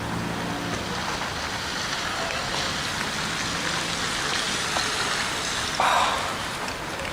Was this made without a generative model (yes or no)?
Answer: yes